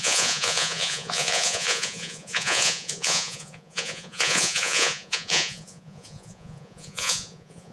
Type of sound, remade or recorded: remade